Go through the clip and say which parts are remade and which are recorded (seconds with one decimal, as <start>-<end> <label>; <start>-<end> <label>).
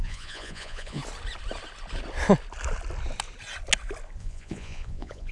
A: 0.0-1.0 remade; 1.0-4.2 recorded; 4.2-5.3 remade